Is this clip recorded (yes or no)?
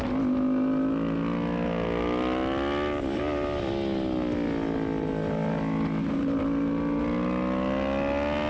yes